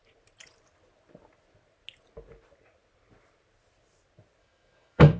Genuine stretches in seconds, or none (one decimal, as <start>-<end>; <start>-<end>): 0.0-4.4